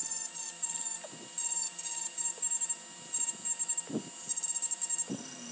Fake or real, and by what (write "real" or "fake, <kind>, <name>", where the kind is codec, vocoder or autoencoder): real